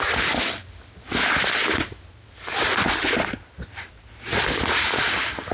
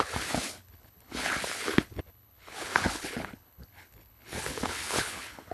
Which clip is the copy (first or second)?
second